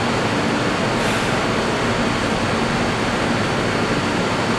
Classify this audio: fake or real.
real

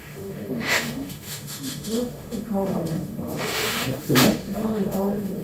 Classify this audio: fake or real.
fake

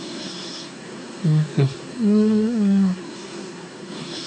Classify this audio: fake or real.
fake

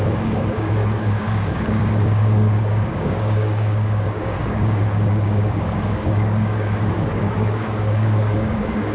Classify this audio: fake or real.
fake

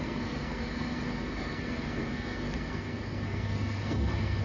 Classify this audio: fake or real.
fake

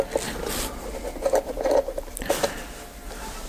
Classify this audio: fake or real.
real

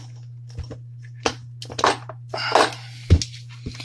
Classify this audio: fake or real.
real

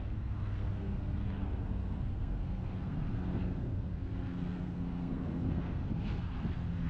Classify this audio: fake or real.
fake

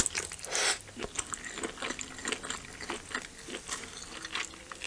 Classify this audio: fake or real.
real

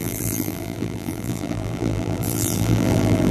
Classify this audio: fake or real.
fake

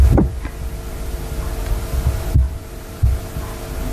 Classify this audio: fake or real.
real